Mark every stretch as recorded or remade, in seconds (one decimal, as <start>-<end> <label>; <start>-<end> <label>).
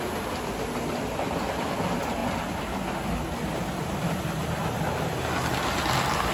0.0-6.3 recorded